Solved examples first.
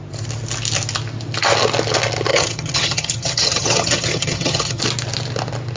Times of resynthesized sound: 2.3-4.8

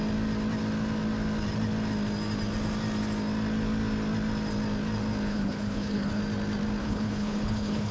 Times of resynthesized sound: 5.3-6.2; 6.8-7.9

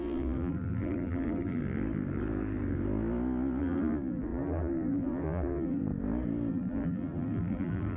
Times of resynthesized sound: 0.0-1.6; 3.6-5.8; 6.5-8.0

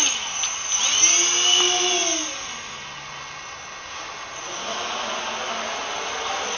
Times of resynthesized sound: none

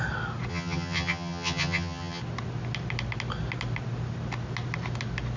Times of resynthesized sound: 0.5-2.2